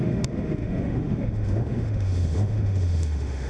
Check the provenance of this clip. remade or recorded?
remade